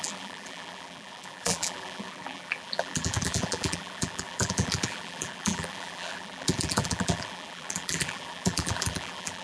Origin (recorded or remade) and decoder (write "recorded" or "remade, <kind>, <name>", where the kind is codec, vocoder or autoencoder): remade, vocoder, BigVGAN v2